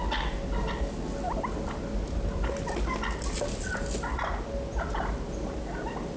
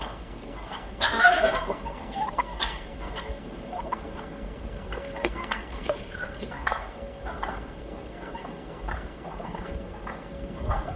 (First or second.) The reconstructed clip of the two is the second